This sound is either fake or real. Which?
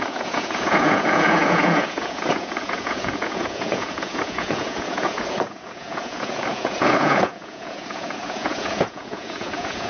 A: fake